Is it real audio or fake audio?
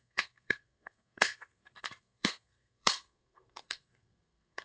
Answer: fake